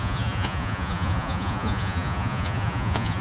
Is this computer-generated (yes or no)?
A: yes